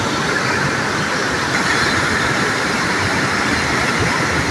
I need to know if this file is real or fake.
fake